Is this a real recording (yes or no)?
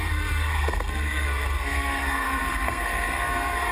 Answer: no